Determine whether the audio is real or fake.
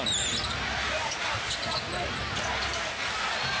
real